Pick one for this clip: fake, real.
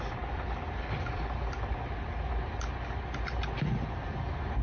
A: real